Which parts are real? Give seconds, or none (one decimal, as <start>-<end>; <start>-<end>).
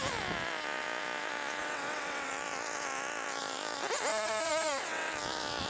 0.0-1.6; 2.3-4.1; 5.1-5.7